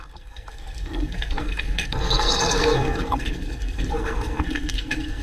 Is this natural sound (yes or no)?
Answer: no